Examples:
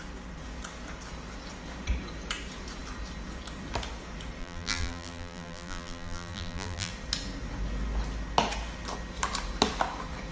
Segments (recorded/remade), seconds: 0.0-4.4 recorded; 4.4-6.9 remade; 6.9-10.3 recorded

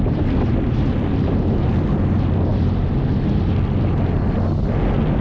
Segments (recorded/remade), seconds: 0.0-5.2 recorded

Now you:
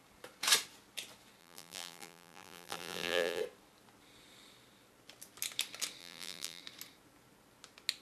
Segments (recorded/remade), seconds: 0.0-1.4 recorded; 1.4-3.4 remade; 3.4-6.0 recorded; 6.0-6.6 remade; 6.6-8.0 recorded

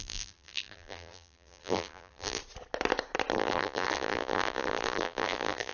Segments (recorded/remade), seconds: 0.0-2.4 remade; 2.4-3.3 recorded; 3.3-5.7 remade

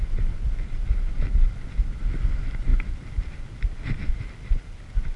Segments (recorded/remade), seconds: 0.0-5.2 recorded

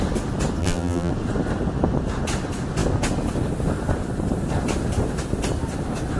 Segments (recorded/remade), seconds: 0.0-0.6 recorded; 0.6-1.1 remade; 1.1-6.2 recorded

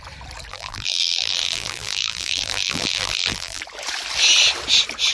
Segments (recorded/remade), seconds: 0.0-0.5 recorded; 0.5-3.6 remade; 3.6-5.1 recorded